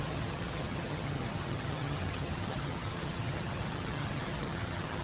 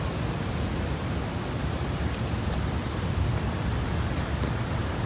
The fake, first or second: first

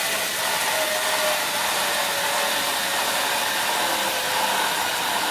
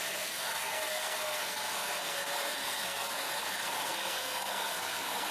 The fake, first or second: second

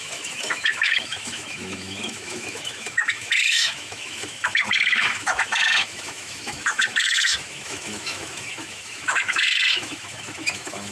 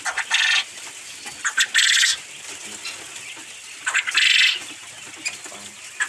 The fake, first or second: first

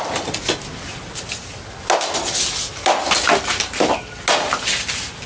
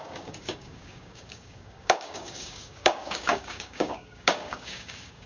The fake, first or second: second